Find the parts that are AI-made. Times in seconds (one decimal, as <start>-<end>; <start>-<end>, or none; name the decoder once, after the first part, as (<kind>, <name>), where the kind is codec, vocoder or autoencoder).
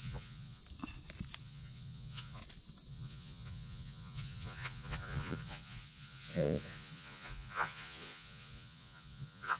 0.0-0.6 (vocoder, Vocos); 1.4-2.4; 2.9-9.6